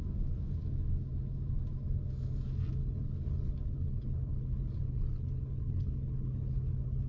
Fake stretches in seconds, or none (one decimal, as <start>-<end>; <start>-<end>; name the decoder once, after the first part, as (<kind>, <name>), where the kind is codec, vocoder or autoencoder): 2.8-7.1 (codec, HILCodec)